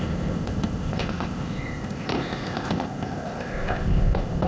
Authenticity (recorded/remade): remade